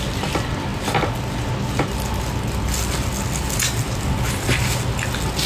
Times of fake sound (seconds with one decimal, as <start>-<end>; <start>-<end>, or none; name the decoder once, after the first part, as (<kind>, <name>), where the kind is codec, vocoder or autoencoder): none